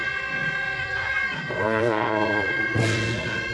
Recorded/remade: remade